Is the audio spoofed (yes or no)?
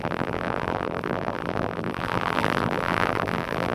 yes